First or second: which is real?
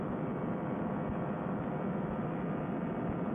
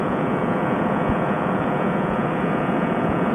first